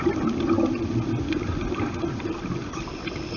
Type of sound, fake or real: real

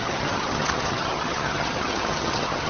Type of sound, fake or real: fake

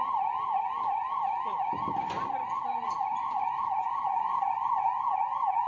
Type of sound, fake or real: real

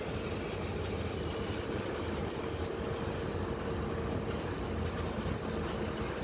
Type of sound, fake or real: real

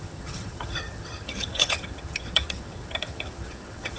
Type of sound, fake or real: fake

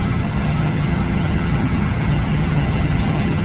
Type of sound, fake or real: fake